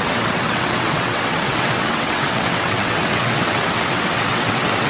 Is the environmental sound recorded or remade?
remade